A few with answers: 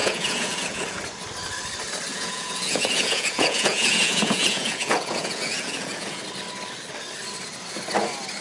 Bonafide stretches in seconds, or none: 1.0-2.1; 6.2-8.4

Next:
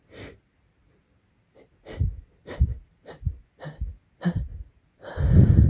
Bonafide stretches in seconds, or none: 0.0-4.5; 5.1-5.7